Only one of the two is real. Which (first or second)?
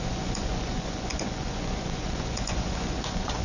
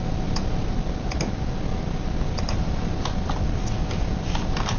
second